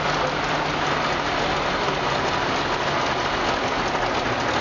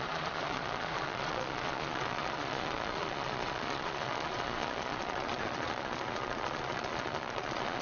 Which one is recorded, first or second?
first